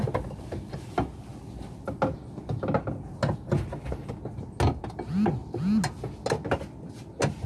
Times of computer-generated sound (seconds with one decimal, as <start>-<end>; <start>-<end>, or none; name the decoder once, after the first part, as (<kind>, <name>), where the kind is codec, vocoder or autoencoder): none